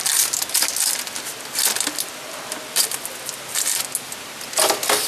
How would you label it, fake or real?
real